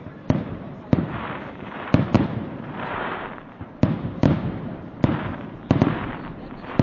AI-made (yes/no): yes